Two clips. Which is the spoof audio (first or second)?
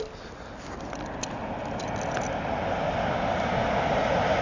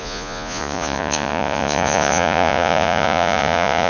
second